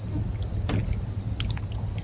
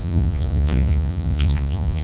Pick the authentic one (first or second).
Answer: first